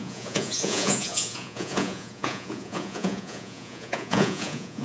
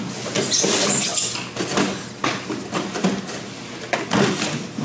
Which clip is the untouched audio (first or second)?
second